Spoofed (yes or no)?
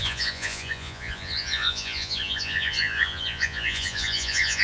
yes